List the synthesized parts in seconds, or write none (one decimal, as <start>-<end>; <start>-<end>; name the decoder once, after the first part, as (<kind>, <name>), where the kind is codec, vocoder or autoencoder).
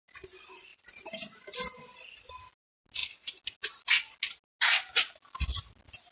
0.7-2.3 (vocoder, BigVGAN v2)